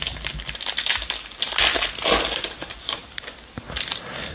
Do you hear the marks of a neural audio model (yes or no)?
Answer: yes